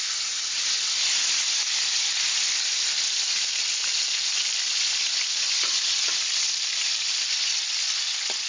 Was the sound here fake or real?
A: real